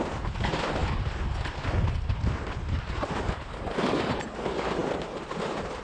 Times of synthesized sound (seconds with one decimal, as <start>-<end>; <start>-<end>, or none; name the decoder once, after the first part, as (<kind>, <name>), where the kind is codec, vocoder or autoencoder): none

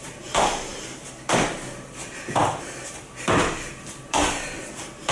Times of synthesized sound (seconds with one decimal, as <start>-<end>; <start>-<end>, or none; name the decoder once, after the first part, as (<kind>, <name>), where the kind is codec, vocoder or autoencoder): 0.0-5.1 (vocoder, BigVGAN v2)